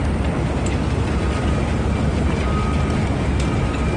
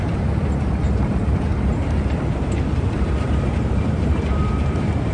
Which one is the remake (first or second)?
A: second